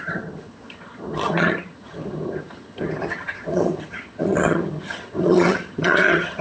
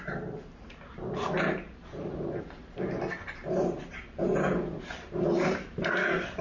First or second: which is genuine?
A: second